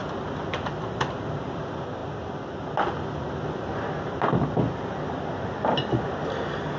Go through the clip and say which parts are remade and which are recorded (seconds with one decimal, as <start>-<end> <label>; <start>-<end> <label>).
0.0-6.8 recorded